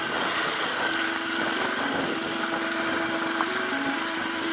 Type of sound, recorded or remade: recorded